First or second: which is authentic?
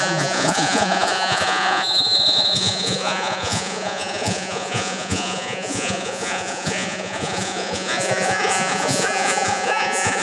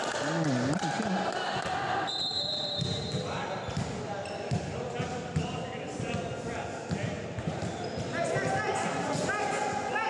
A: second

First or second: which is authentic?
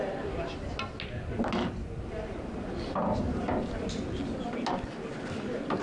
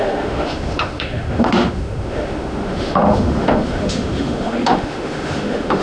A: first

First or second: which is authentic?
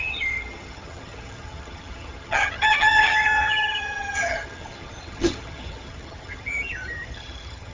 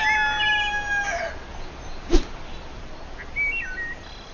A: second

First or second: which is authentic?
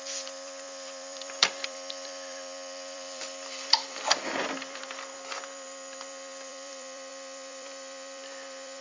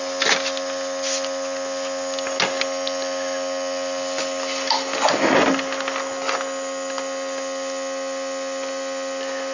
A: second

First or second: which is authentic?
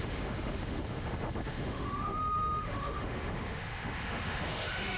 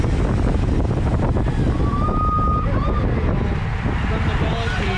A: second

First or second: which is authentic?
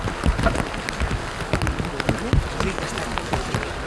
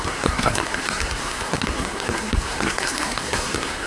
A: first